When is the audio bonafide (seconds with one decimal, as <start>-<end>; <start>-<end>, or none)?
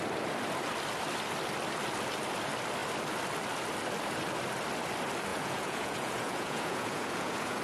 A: 0.0-5.3